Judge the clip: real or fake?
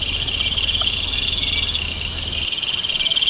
real